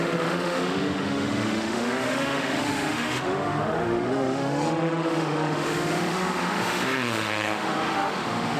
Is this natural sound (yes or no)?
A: no